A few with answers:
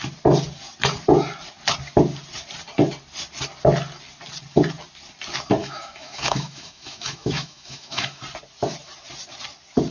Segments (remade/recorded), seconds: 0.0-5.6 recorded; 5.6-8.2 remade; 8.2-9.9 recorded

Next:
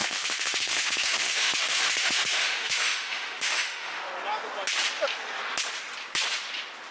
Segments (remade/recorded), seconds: 0.0-4.1 remade; 4.1-6.9 recorded

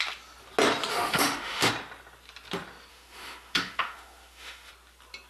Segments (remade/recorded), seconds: 0.0-0.9 recorded; 0.9-1.7 remade; 1.7-2.9 recorded; 2.9-4.7 remade; 4.7-5.3 recorded

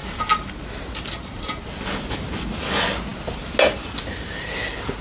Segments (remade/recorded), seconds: 0.0-5.0 recorded

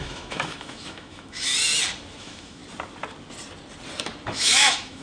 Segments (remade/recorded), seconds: 0.0-1.5 remade; 1.5-2.2 recorded; 2.2-2.6 remade; 2.6-4.3 recorded; 4.3-5.0 remade

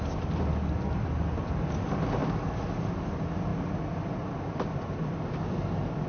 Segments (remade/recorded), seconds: 0.0-6.1 recorded

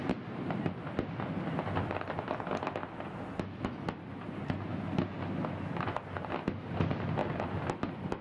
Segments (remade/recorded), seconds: 0.0-8.2 recorded